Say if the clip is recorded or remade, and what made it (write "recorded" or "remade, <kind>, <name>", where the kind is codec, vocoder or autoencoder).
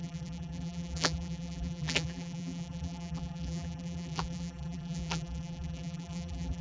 remade, vocoder, BigVGAN v2